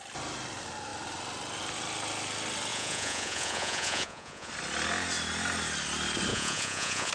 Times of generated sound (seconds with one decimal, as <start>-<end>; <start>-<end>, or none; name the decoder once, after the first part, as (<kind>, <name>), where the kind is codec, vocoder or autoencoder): 2.7-4.5 (vocoder, Vocos); 6.3-7.1